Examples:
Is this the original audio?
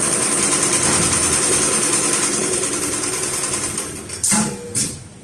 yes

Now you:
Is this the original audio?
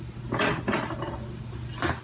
yes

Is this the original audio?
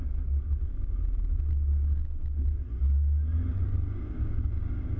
yes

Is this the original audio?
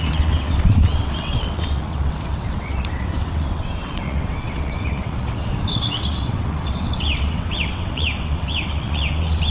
no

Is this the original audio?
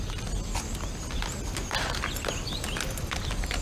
yes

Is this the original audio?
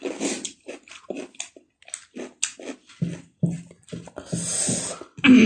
yes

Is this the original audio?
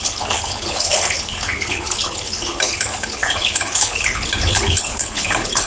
no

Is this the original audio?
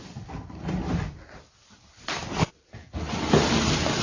no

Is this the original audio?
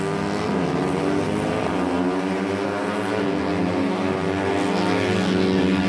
yes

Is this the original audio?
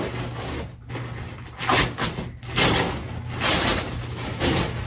yes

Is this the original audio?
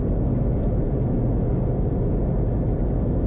yes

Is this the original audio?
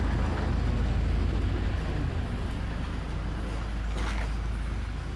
yes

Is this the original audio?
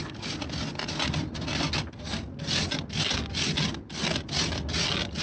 yes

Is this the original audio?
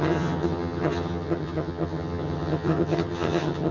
no